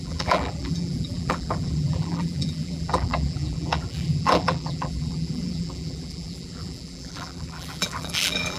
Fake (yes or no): yes